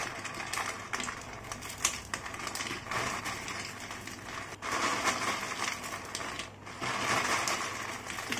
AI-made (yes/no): no